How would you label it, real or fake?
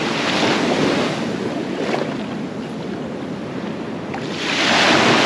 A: real